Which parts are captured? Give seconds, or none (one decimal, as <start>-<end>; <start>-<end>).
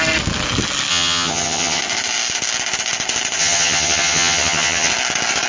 0.0-0.9; 1.8-3.4; 4.9-5.5